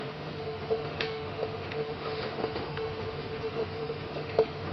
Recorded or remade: remade